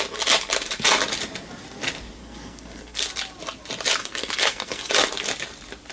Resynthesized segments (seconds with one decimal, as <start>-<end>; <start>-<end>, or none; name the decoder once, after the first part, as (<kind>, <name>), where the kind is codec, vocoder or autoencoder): 2.2-3.0 (codec, SNAC); 4.0-4.9